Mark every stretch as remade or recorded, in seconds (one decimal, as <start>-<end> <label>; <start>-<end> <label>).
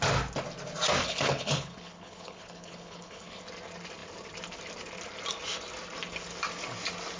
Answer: 0.0-1.0 recorded; 1.0-3.4 remade; 3.4-7.2 recorded